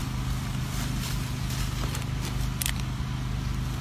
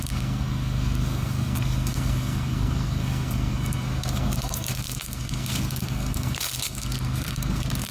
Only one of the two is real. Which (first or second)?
first